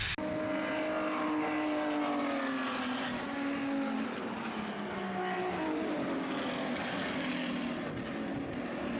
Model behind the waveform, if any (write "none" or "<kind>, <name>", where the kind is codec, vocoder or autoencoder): none